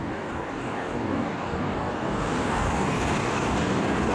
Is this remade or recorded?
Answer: remade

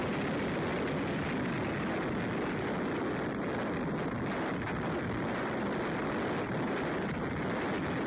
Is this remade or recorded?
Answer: recorded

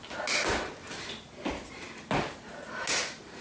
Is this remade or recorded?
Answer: recorded